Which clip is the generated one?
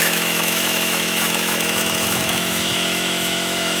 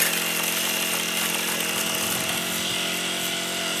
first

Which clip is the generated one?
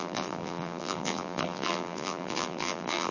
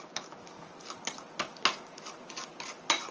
first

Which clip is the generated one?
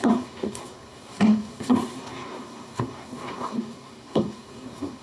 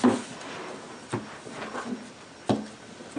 first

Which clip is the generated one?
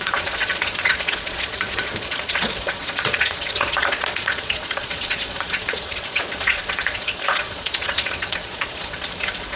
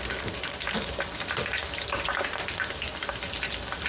first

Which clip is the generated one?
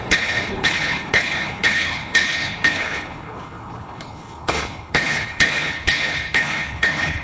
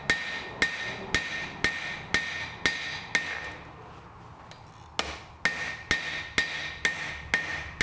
first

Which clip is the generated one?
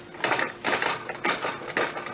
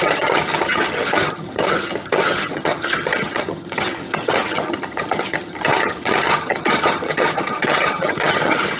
second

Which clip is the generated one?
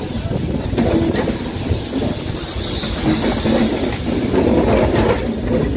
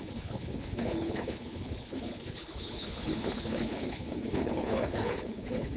second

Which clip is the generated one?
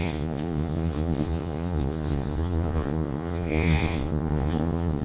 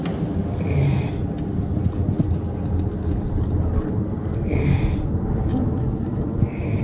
first